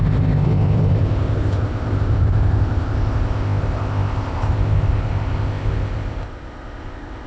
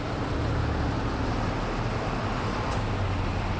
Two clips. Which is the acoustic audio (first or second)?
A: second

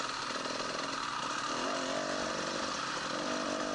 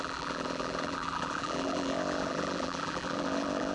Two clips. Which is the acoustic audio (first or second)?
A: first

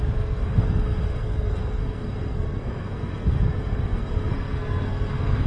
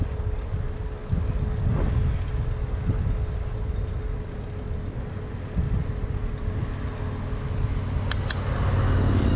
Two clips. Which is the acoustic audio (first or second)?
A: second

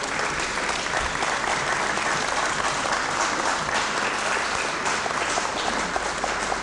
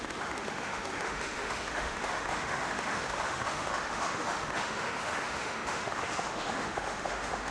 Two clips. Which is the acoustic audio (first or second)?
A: first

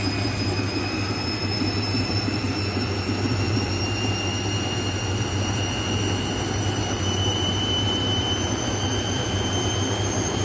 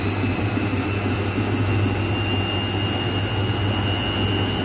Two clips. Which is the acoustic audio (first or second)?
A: second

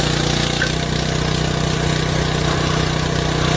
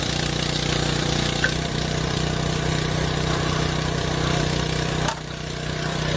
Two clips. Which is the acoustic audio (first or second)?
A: first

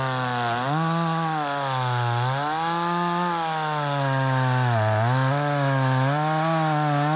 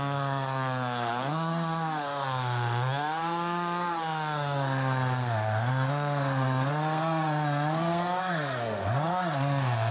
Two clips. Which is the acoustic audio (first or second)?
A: first